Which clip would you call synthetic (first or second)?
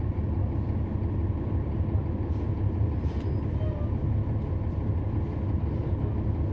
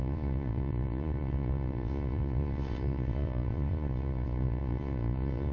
second